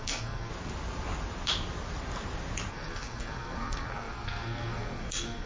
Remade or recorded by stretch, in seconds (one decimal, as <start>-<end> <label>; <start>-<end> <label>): 0.0-0.5 remade; 0.5-2.7 recorded; 2.7-5.5 remade